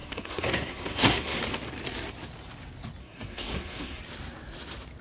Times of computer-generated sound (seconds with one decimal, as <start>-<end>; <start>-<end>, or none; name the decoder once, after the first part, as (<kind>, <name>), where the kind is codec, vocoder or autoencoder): 0.0-1.4 (codec, SNAC); 3.0-4.0